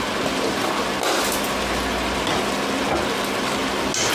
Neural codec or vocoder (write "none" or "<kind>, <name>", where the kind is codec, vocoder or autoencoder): none